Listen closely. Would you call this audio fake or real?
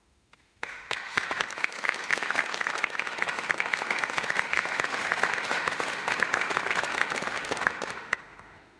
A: fake